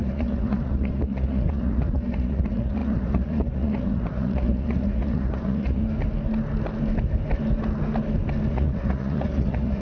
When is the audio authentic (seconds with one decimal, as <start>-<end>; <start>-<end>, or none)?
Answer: 5.8-8.5